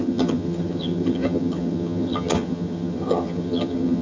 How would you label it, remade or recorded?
remade